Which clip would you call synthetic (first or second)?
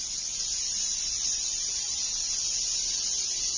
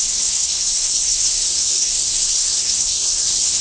second